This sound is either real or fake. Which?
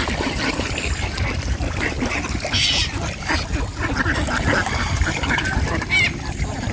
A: real